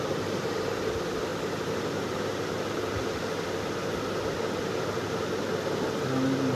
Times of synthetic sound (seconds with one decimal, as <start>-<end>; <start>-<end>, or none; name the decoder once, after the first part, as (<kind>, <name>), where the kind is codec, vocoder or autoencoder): none